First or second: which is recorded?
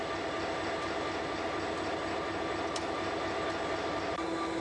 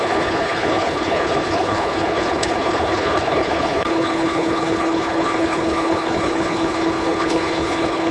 first